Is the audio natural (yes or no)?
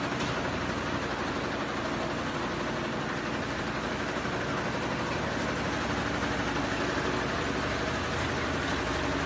yes